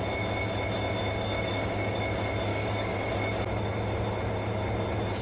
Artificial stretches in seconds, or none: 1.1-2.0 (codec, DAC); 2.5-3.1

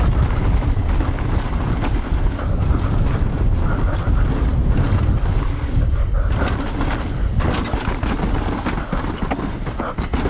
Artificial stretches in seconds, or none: none

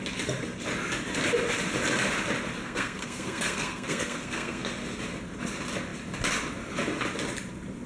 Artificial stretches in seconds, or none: 2.6-4.7 (codec, SNAC)

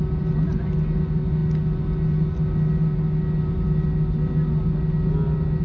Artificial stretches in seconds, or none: none

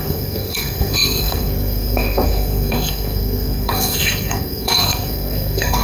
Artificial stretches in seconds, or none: 0.0-5.8 (codec, SNAC)

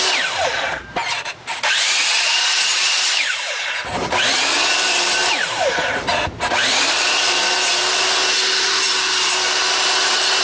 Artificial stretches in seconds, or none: none

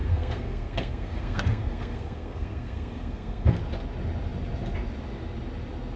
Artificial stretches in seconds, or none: 0.0-3.6 (codec, SNAC)